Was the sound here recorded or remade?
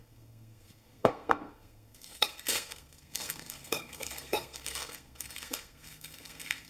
remade